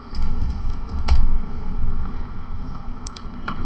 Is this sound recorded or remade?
remade